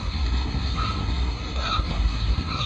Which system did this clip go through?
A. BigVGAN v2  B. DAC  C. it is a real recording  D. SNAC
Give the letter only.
D